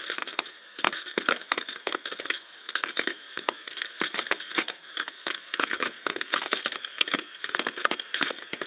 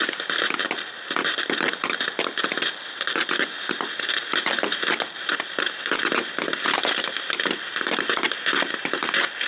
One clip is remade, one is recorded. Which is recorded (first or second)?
second